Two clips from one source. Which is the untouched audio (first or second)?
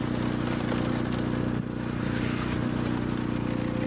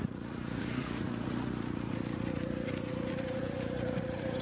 first